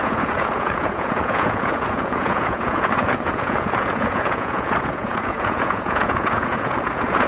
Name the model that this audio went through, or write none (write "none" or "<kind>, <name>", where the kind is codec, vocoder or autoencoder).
vocoder, Vocos